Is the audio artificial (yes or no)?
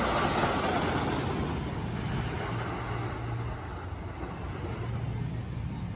no